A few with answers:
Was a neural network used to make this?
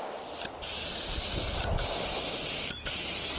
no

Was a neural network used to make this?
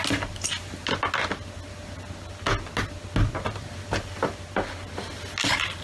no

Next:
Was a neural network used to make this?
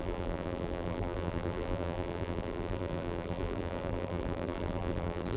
yes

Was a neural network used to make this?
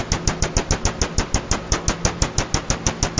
no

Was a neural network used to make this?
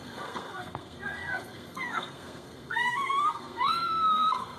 yes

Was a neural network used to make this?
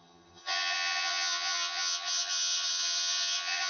yes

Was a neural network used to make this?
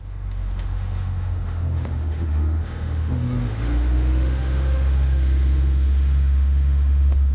yes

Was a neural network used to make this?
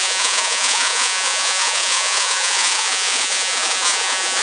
yes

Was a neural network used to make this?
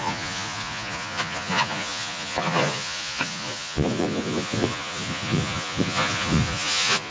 yes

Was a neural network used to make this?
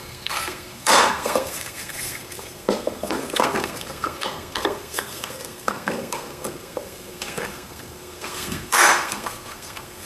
yes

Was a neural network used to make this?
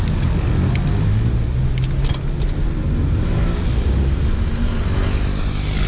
no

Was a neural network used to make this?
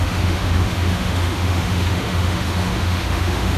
yes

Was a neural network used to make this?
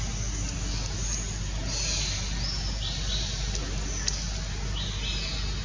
no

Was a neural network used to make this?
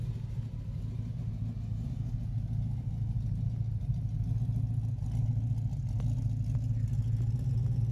no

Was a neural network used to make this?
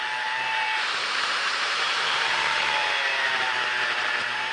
yes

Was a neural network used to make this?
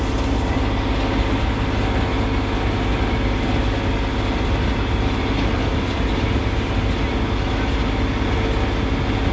no